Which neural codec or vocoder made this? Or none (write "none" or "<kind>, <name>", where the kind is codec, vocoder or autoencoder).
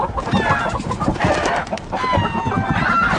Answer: none